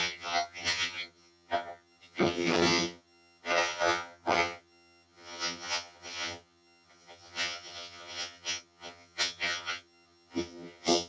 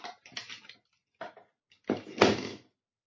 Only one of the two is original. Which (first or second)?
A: second